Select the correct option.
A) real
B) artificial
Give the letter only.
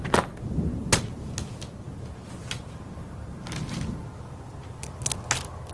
A